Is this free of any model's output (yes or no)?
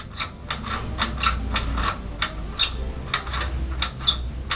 yes